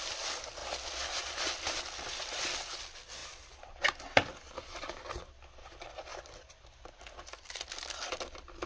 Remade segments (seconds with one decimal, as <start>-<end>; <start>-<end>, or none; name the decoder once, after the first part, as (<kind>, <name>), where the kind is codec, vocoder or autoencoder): 3.2-4.8 (vocoder, BigVGAN v2); 6.1-7.5